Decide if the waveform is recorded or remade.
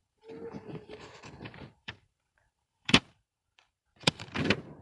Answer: remade